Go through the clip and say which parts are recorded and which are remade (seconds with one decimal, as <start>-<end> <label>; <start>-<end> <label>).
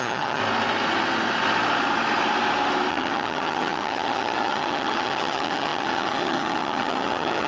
0.0-0.4 remade; 0.4-2.9 recorded; 2.9-7.5 remade